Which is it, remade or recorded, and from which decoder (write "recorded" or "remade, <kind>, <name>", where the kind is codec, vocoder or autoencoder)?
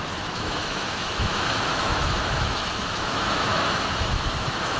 remade, autoencoder, DAC-VAE